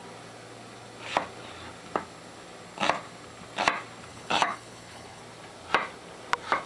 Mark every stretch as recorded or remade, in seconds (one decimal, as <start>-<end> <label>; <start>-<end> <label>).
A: 0.0-4.1 recorded; 4.1-5.2 remade; 5.2-6.7 recorded